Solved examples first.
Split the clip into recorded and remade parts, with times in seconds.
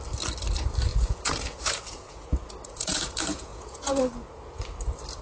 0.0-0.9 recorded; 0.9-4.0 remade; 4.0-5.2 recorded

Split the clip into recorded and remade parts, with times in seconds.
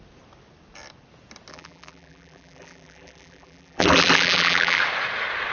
0.0-1.5 recorded; 1.5-4.8 remade; 4.8-5.5 recorded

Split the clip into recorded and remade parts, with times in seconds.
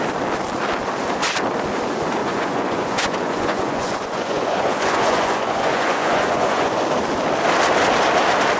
0.0-2.2 recorded; 2.2-6.8 remade; 6.8-8.6 recorded